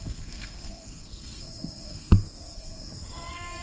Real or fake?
fake